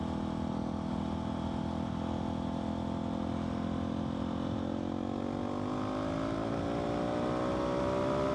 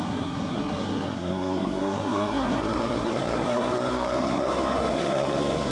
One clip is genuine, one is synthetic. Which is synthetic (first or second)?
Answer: second